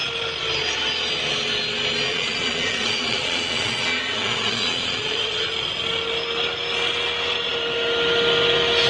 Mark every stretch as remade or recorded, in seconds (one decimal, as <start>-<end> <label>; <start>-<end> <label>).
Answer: 0.0-2.1 recorded; 2.1-5.5 remade; 5.5-8.9 recorded